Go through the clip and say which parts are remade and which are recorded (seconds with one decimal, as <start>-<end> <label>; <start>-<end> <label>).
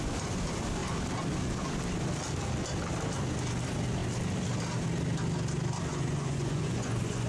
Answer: 0.0-5.9 recorded; 5.9-7.3 remade